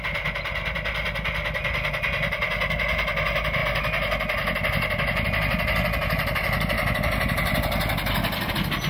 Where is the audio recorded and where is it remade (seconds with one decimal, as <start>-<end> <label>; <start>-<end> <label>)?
0.0-8.9 recorded